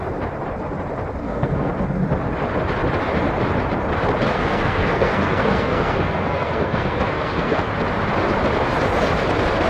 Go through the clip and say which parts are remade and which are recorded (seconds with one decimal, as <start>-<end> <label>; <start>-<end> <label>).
0.0-1.2 recorded; 1.2-1.7 remade; 1.7-4.3 recorded; 4.3-7.7 remade; 7.7-9.7 recorded